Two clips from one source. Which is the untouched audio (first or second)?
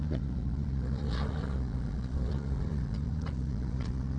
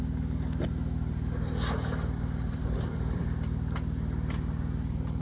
second